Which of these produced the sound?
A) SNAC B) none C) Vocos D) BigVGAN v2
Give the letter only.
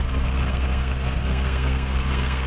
A